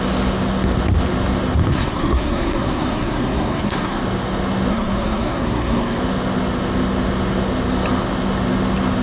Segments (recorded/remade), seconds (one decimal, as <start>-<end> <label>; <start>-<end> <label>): 0.0-1.7 recorded; 1.7-4.0 remade; 4.0-4.7 recorded; 4.7-6.0 remade; 6.0-9.0 recorded